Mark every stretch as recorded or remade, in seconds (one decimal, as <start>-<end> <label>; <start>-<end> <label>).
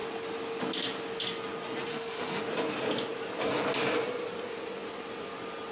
0.0-1.9 recorded; 1.9-2.4 remade; 2.4-5.7 recorded